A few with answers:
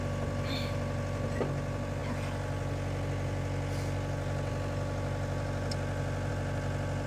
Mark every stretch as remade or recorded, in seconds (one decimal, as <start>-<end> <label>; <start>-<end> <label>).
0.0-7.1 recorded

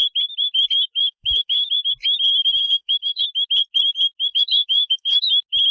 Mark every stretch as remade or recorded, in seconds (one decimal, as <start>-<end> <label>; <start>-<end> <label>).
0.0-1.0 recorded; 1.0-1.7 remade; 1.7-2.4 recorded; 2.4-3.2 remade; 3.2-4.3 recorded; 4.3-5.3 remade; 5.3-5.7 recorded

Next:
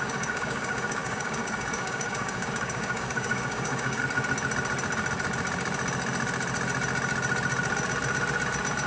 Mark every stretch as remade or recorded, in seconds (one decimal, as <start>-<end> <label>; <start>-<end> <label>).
0.0-4.0 remade; 4.0-8.9 recorded

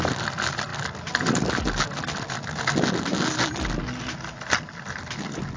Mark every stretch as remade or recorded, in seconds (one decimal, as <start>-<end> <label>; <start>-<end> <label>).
0.0-5.6 recorded

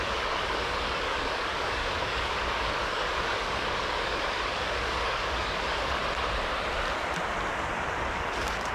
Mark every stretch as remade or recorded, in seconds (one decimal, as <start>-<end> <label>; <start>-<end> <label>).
0.0-6.0 remade; 6.0-7.9 recorded; 7.9-8.7 remade

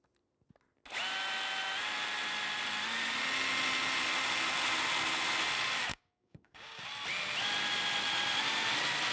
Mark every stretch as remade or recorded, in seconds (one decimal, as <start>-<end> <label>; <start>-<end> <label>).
0.0-5.9 recorded; 5.9-6.8 remade; 6.8-9.1 recorded